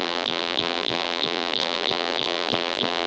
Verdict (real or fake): fake